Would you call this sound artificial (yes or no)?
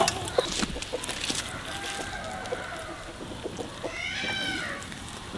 no